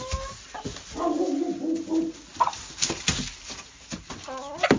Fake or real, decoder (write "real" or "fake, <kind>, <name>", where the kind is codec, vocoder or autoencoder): real